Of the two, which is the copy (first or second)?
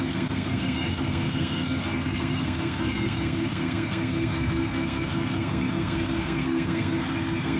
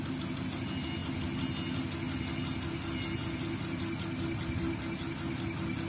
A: first